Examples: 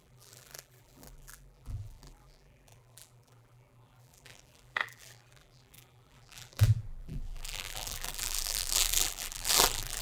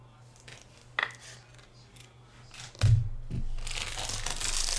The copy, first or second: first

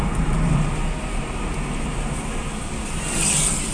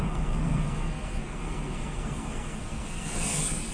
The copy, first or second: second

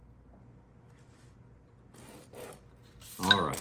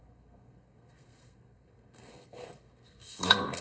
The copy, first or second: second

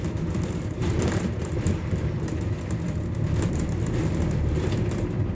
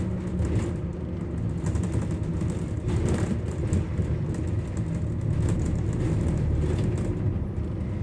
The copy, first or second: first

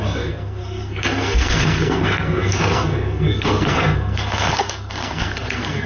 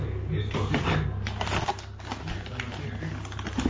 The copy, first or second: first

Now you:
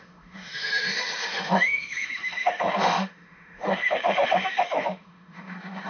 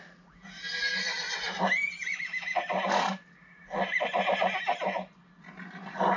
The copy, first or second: first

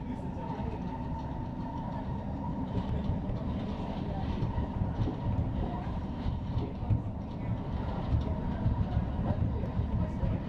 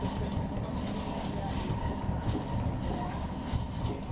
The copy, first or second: first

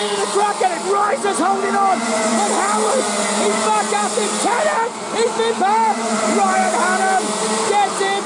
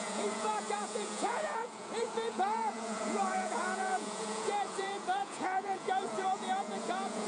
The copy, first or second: second